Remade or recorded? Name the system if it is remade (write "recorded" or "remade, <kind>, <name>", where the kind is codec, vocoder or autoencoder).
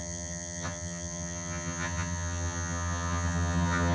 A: remade, vocoder, HiFi-GAN